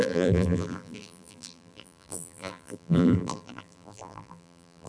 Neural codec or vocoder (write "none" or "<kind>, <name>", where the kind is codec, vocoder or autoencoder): vocoder, BigVGAN v2